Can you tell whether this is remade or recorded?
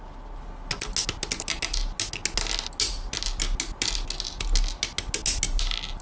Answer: recorded